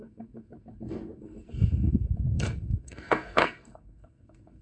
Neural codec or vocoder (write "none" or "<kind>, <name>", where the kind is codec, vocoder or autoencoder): codec, SNAC